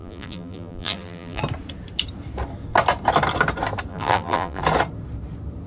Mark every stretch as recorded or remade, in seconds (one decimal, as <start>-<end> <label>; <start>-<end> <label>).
0.0-1.4 remade; 1.4-3.9 recorded; 3.9-4.6 remade; 4.6-5.7 recorded